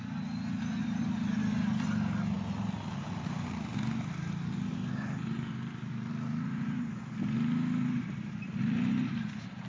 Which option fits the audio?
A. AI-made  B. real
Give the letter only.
B